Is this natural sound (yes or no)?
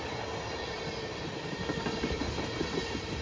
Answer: yes